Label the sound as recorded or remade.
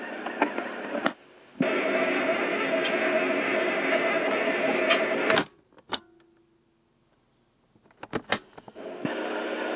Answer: recorded